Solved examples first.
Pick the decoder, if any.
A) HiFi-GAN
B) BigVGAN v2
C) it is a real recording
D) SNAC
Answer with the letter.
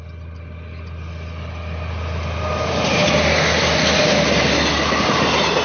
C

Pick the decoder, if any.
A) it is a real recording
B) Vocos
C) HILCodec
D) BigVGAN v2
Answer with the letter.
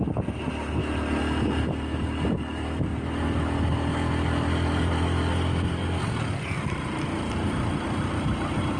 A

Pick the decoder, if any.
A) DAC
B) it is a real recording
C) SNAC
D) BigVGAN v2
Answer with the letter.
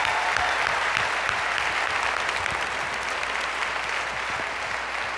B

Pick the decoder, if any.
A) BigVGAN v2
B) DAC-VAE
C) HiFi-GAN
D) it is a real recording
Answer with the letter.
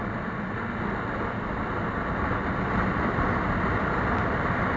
D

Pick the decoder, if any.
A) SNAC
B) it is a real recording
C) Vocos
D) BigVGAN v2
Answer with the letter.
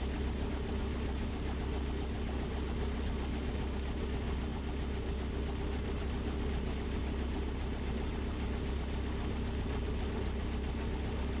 B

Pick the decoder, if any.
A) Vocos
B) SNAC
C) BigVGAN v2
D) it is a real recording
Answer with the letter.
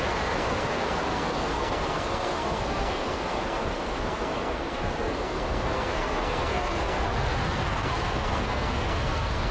B